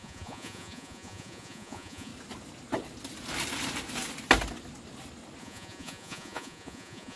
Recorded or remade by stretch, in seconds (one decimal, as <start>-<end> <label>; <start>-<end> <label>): 0.0-2.1 remade; 2.1-5.4 recorded; 5.4-7.2 remade